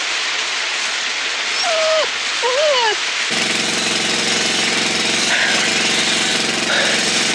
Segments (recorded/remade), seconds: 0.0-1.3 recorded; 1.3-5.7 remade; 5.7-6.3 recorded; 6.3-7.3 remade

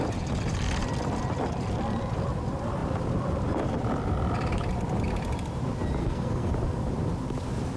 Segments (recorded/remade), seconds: 0.0-6.0 recorded; 6.0-6.5 remade; 6.5-7.8 recorded

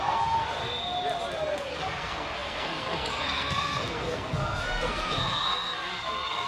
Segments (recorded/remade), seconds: 0.0-0.6 remade; 0.6-1.3 recorded; 1.3-6.5 remade

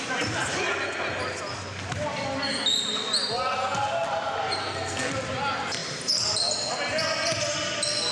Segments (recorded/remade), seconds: 0.0-4.6 recorded; 4.6-5.1 remade; 5.1-8.1 recorded

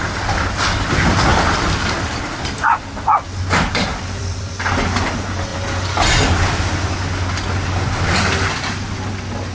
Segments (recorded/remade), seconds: 0.0-1.3 recorded; 1.3-2.4 remade; 2.4-3.9 recorded; 3.9-4.5 remade; 4.5-5.5 recorded; 5.5-6.7 remade; 6.7-9.5 recorded

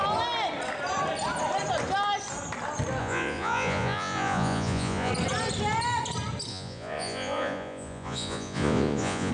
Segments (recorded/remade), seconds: 0.0-3.0 recorded; 3.0-5.1 remade; 5.1-6.5 recorded; 6.5-9.3 remade

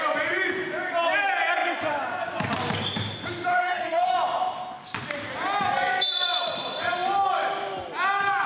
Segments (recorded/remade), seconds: 0.0-3.5 recorded; 3.5-4.1 remade; 4.1-8.5 recorded

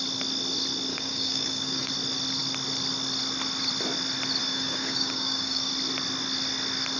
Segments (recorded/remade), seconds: 0.0-0.9 recorded; 0.9-1.9 remade; 1.9-4.4 recorded; 4.4-5.7 remade; 5.7-7.0 recorded